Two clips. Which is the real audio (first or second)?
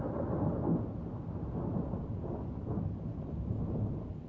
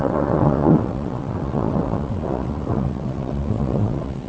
first